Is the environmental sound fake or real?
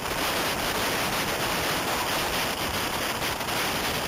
real